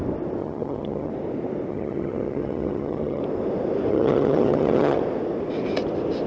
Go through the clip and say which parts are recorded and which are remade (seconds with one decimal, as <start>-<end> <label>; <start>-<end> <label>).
0.0-0.4 recorded; 0.4-1.1 remade; 1.1-1.7 recorded; 1.7-3.2 remade; 3.2-3.9 recorded; 3.9-5.0 remade; 5.0-6.3 recorded